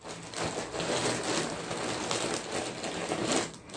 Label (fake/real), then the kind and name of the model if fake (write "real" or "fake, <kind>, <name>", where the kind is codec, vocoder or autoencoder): real